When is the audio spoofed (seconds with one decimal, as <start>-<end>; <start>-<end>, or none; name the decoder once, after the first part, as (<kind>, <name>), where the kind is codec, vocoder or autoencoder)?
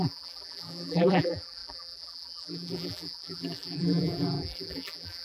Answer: 0.0-5.2 (vocoder, BigVGAN v2)